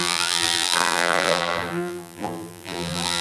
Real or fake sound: fake